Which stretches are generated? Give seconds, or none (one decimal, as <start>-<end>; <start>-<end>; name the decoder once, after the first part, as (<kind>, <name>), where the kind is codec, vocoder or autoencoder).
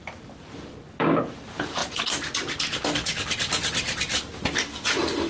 none